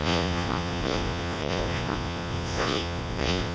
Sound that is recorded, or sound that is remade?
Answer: remade